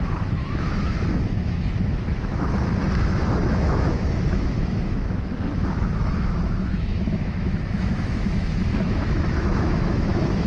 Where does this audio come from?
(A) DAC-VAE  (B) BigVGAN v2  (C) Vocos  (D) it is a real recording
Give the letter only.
A